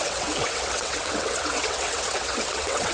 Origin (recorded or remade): remade